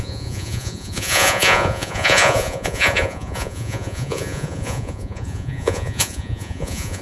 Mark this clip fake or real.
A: fake